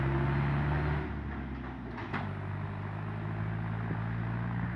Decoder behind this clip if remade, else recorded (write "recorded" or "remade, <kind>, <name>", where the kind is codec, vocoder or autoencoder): recorded